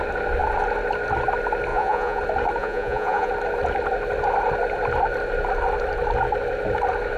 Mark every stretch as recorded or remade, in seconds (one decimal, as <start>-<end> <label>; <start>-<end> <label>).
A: 0.0-1.7 recorded; 1.7-2.2 remade; 2.2-2.6 recorded; 2.6-3.3 remade; 3.3-7.2 recorded